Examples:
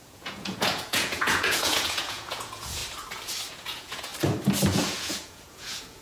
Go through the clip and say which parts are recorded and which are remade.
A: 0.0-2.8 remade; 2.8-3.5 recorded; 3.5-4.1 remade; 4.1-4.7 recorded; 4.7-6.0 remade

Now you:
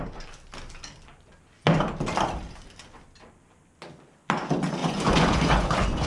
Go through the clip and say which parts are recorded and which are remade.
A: 0.0-4.8 recorded; 4.8-6.1 remade

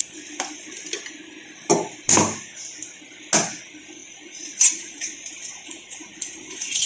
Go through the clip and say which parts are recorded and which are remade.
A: 0.0-4.0 recorded; 4.0-6.9 remade

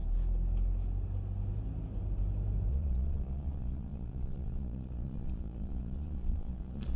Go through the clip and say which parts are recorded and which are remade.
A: 0.0-2.7 recorded; 2.7-7.0 remade

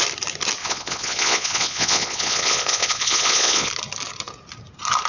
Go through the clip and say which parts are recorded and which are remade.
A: 0.0-0.6 recorded; 0.6-3.7 remade; 3.7-5.1 recorded

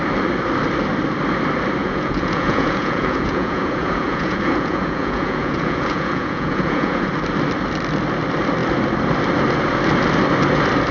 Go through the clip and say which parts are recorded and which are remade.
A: 0.0-1.8 recorded; 1.8-7.1 remade; 7.1-10.9 recorded

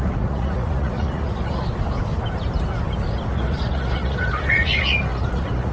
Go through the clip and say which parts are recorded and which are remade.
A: 0.0-1.6 remade; 1.6-3.3 recorded; 3.3-5.7 remade